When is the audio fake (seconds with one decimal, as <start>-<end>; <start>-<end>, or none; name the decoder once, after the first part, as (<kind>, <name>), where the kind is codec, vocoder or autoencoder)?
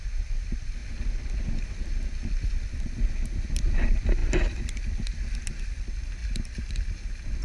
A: none